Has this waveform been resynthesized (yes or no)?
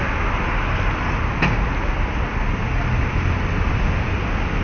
no